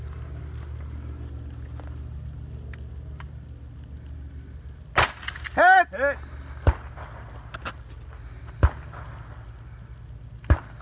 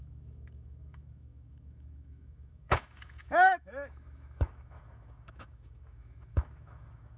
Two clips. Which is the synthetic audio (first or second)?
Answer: second